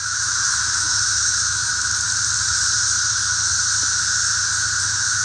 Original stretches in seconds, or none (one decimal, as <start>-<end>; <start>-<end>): 1.7-4.8